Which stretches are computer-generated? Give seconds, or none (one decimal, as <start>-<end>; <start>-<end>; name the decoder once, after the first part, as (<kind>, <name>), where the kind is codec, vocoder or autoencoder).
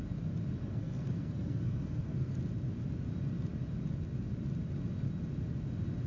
0.6-2.4 (codec, SNAC)